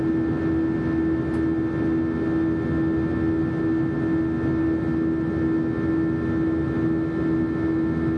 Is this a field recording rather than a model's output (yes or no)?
yes